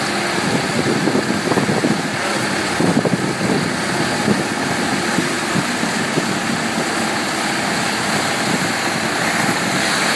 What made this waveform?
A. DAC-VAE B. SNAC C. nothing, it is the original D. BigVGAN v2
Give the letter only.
C